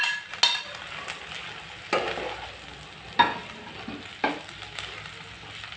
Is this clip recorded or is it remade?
recorded